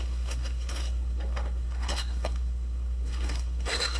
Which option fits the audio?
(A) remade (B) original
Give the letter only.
A